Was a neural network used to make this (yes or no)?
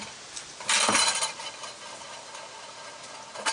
no